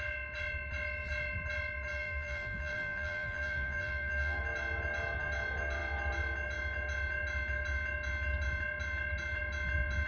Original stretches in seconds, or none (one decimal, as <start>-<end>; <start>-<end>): 0.0-1.9; 4.4-10.1